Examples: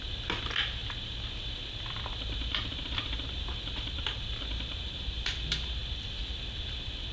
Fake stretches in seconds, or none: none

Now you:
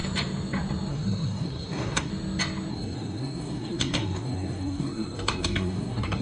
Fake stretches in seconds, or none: 0.9-2.1; 2.7-6.2

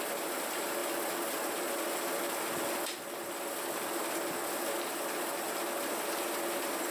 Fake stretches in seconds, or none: none

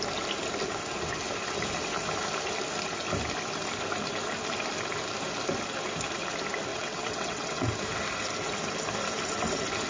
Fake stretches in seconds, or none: 6.7-7.7